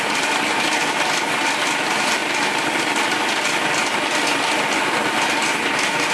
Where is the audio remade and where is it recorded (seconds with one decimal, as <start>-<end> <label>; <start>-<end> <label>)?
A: 0.0-6.1 recorded